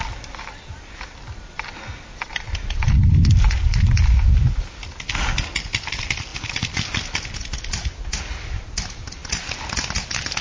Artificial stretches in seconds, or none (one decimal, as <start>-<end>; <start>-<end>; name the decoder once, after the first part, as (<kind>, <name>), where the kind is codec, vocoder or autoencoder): 6.3-8.6 (vocoder, BigVGAN v2); 9.2-9.9